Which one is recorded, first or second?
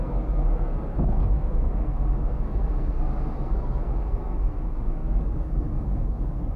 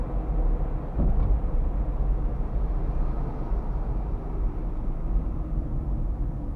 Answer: second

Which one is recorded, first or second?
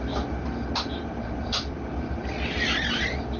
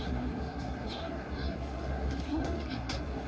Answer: first